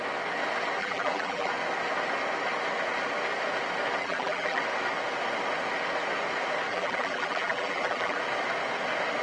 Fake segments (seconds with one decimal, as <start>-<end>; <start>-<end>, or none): 0.8-1.5; 4.0-4.6; 6.7-8.2